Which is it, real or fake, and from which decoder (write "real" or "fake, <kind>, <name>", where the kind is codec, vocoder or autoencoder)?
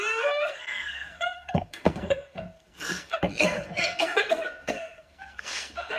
fake, codec, SNAC